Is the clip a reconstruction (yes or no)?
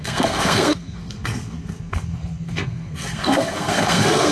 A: yes